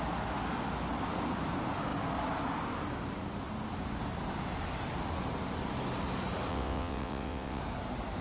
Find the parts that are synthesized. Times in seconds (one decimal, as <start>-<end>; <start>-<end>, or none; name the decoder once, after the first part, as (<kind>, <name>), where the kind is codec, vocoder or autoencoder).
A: 6.5-7.6 (vocoder, WaveNeXt)